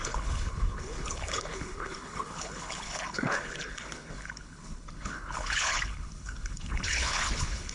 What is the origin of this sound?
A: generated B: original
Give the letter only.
A